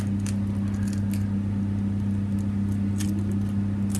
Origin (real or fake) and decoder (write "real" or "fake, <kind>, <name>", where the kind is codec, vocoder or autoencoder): real